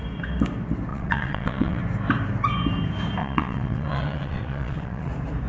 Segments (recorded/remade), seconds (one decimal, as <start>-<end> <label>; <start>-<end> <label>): 0.0-0.9 recorded; 0.9-1.8 remade; 1.8-3.2 recorded; 3.2-5.1 remade; 5.1-5.5 recorded